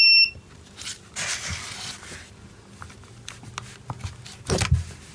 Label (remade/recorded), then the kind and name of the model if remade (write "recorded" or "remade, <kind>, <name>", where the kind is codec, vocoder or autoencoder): recorded